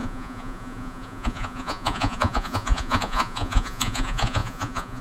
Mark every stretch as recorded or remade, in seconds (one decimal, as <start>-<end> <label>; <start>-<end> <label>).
0.0-5.0 remade